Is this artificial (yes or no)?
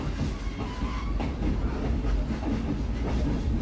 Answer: no